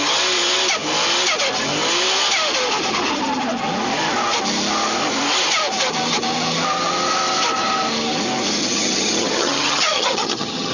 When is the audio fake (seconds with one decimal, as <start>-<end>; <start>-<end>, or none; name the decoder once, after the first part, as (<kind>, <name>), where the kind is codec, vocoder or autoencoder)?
8.6-10.7 (vocoder, HiFi-GAN)